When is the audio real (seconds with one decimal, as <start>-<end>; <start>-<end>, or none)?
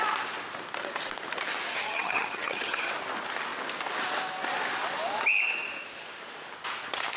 0.0-1.7; 2.9-7.2